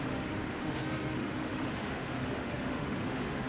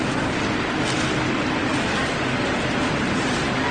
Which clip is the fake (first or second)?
first